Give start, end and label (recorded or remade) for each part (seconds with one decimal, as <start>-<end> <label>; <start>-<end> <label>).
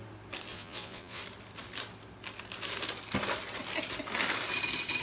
0.0-0.5 recorded; 0.5-1.2 remade; 1.2-5.0 recorded